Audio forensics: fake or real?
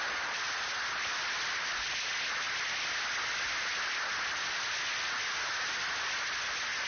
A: real